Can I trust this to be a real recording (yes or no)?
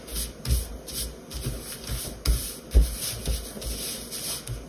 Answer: yes